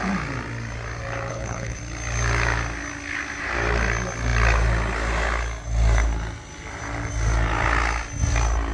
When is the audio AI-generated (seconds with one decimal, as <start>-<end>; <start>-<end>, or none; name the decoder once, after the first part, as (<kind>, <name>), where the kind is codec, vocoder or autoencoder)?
1.3-1.8 (codec, HILCodec)